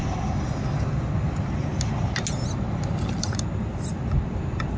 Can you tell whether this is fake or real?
real